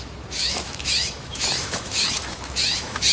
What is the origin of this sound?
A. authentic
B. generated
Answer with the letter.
B